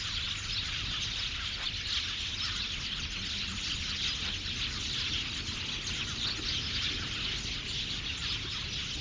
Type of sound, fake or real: real